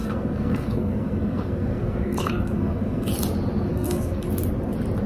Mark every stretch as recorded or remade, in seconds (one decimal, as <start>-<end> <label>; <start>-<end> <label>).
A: 0.0-3.1 remade; 3.1-3.7 recorded; 3.7-4.3 remade; 4.3-5.1 recorded